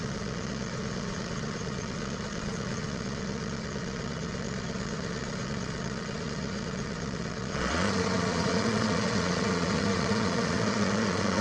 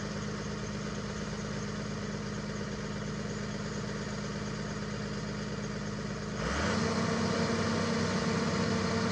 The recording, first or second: second